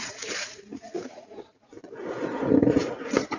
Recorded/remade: remade